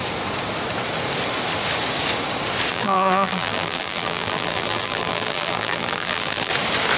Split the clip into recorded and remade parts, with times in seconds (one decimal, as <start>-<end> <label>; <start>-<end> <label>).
0.0-2.7 recorded; 2.7-6.5 remade; 6.5-7.0 recorded

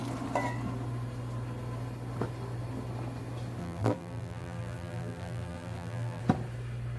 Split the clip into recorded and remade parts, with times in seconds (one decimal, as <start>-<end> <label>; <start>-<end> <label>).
0.0-3.6 recorded; 3.6-6.2 remade; 6.2-7.0 recorded

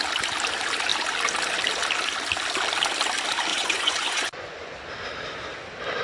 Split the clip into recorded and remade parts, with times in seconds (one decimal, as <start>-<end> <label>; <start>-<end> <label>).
0.0-3.5 recorded; 3.5-4.7 remade; 4.7-6.0 recorded